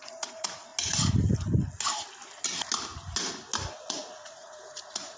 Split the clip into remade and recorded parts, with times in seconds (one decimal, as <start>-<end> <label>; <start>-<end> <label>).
0.0-0.7 remade; 0.7-3.8 recorded; 3.8-5.2 remade